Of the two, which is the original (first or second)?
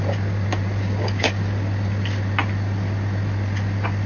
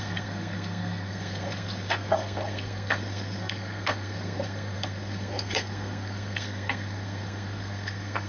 first